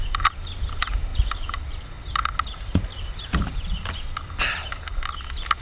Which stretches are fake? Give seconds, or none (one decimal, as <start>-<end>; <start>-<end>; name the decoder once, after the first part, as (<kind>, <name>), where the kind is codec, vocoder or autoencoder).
none